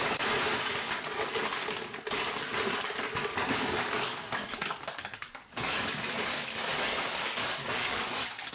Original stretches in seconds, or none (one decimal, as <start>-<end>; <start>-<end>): 0.0-3.3